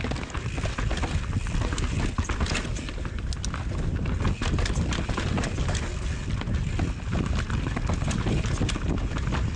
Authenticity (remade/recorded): recorded